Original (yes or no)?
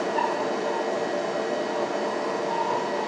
yes